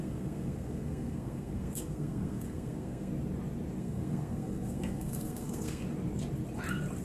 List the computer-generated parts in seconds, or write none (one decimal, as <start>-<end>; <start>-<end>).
0.0-3.1; 3.8-5.8